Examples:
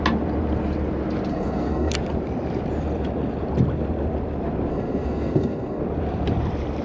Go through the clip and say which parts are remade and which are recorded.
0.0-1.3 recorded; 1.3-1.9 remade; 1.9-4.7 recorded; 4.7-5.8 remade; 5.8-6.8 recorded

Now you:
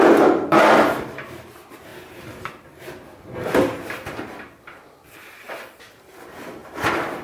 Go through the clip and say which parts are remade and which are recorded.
0.0-1.9 remade; 1.9-5.1 recorded; 5.1-7.2 remade

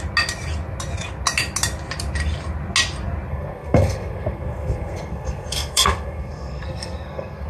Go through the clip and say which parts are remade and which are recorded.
0.0-3.3 recorded; 3.3-7.5 remade

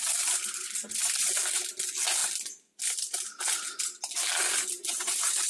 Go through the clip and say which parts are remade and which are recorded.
0.0-5.5 recorded

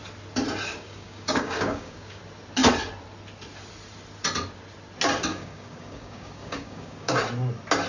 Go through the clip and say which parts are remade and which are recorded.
0.0-0.7 recorded; 0.7-2.2 remade; 2.2-5.3 recorded; 5.3-7.2 remade; 7.2-7.9 recorded

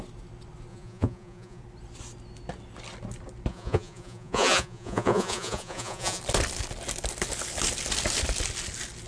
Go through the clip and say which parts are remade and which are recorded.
0.0-0.7 recorded; 0.7-1.6 remade; 1.6-3.5 recorded; 3.5-6.2 remade; 6.2-9.1 recorded

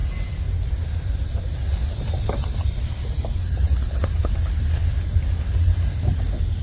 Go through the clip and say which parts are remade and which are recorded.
0.0-6.6 recorded

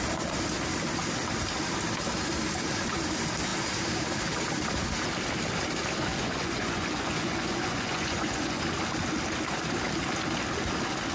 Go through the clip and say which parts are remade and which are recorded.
0.0-6.1 recorded; 6.1-8.6 remade; 8.6-11.1 recorded